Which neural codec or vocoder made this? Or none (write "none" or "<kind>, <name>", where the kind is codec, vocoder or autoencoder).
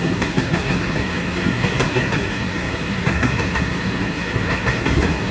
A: codec, SNAC